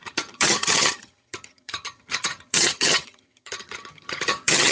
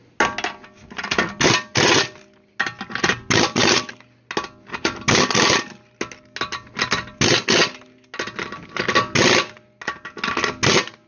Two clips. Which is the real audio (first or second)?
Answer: second